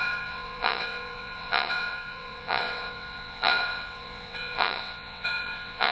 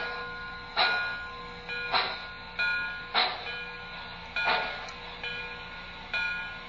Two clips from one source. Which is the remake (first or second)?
first